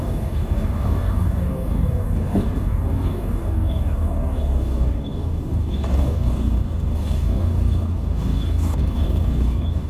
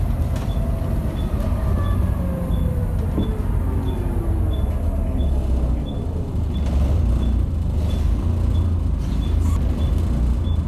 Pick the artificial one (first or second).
first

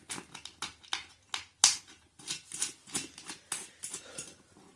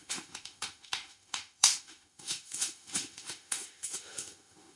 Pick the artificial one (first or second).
second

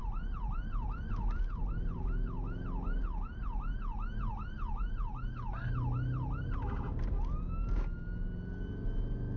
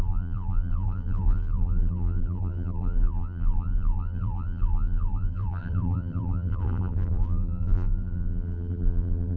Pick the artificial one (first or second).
second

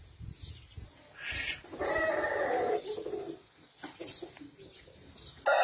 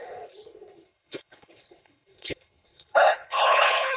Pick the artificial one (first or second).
second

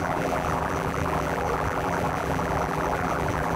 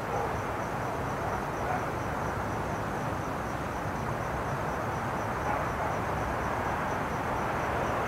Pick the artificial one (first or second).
first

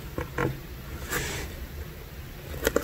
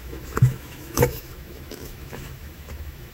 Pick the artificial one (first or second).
second